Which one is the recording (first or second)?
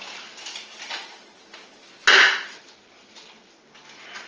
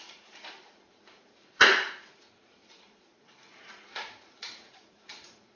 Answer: first